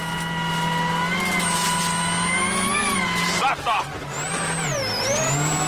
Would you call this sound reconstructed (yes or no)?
no